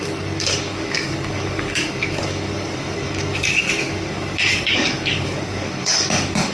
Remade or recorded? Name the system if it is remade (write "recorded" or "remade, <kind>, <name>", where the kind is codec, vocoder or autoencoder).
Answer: remade, codec, DAC